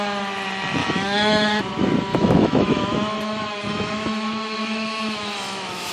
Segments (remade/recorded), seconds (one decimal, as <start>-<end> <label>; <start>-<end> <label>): 0.0-0.8 recorded; 0.8-1.6 remade; 1.6-2.1 recorded; 2.1-5.9 remade